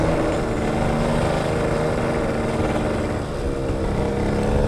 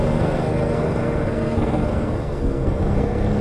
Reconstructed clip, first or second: second